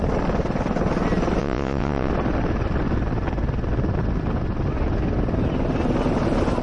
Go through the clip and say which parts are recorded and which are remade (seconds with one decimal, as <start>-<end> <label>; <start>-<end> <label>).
0.0-1.4 recorded; 1.4-2.1 remade; 2.1-6.6 recorded